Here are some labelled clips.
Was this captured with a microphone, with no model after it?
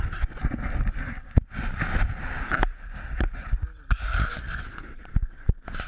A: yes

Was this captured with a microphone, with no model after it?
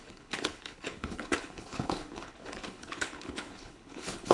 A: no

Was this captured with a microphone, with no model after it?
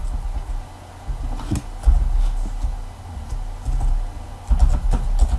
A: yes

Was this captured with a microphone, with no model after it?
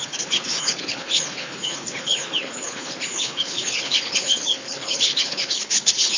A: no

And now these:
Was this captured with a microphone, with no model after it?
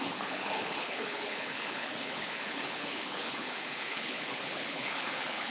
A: no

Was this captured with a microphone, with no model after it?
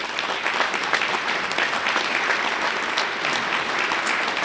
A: yes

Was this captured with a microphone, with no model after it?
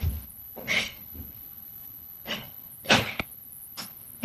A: no